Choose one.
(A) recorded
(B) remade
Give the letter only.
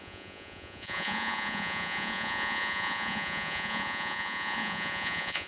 B